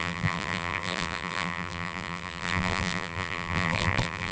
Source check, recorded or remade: remade